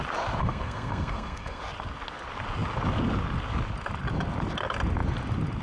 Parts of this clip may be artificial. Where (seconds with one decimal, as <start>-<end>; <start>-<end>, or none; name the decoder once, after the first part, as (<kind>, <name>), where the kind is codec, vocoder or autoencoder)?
0.4-1.6 (codec, SNAC)